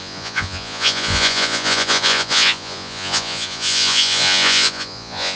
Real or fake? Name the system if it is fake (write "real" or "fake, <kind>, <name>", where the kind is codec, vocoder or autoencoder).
fake, vocoder, Vocos